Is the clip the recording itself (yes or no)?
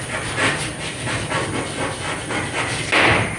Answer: yes